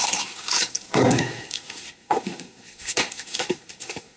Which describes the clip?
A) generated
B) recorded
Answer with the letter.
A